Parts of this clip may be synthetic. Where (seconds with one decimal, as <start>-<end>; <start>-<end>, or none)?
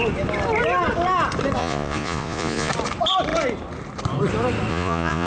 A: 1.6-2.7; 4.7-5.3